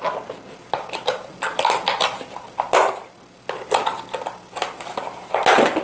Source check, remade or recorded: recorded